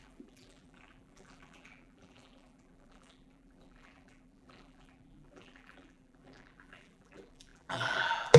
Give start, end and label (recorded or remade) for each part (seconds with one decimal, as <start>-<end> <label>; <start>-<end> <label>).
0.0-8.4 remade